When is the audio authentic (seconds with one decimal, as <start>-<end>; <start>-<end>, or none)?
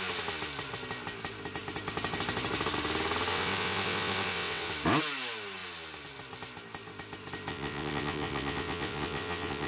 0.0-3.3; 4.7-7.5